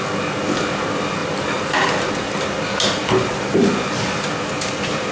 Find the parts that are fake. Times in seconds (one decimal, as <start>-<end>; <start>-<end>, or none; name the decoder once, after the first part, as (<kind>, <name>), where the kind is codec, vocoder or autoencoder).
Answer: 1.2-2.4 (vocoder, BigVGAN v2); 3.0-5.1